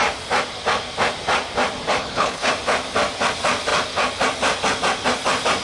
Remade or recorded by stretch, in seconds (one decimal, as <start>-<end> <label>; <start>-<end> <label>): 0.0-2.0 recorded; 2.0-2.5 remade; 2.5-5.6 recorded